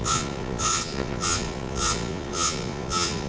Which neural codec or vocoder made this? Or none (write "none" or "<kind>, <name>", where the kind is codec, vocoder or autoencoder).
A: vocoder, Vocos